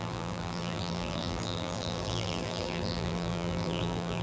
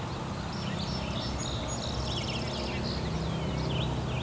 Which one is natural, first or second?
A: second